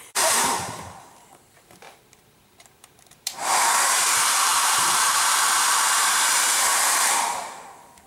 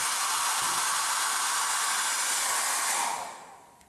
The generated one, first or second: first